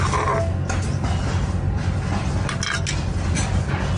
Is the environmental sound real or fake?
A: real